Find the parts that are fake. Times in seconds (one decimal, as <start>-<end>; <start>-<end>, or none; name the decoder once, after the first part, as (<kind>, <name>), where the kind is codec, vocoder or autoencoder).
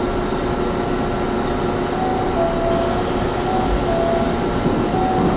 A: none